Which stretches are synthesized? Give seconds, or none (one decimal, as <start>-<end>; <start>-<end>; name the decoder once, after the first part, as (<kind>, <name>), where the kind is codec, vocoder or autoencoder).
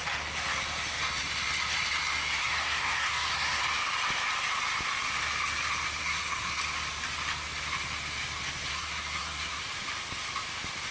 2.4-3.6 (codec, SNAC); 6.0-6.6; 8.7-9.6